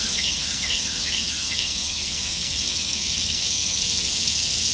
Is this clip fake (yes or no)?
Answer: yes